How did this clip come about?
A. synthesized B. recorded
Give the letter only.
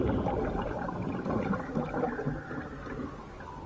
B